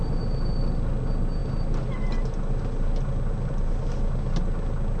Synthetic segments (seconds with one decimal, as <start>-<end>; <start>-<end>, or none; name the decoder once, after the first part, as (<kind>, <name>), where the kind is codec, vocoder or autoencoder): none